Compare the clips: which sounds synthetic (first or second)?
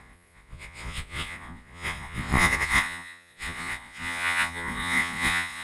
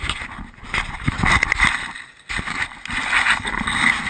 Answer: first